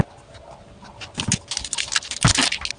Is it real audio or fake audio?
real